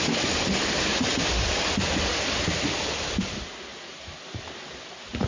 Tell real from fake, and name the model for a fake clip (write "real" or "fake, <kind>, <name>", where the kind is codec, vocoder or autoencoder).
real